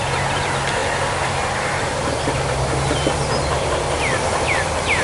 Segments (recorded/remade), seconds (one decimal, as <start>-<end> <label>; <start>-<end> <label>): 0.0-5.0 recorded